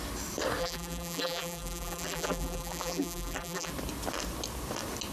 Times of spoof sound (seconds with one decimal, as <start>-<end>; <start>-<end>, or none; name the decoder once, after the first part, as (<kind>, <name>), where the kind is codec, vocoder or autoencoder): 0.6-3.7 (vocoder, BigVGAN v2)